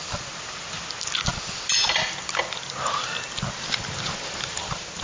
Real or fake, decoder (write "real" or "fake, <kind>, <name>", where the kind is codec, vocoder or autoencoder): real